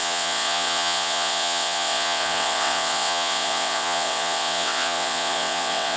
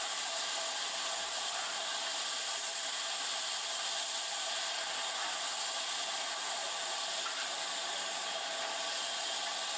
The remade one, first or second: first